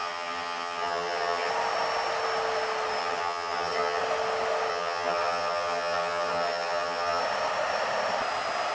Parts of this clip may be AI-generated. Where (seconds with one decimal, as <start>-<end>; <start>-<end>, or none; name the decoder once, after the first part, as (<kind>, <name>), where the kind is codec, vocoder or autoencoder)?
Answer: 0.0-1.5 (vocoder, HiFi-GAN); 3.0-4.0; 4.7-7.2